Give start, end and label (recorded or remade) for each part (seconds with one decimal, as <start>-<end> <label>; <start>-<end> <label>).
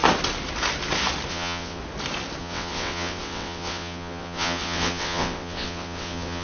0.0-1.3 recorded; 1.3-1.8 remade; 1.8-2.4 recorded; 2.4-6.4 remade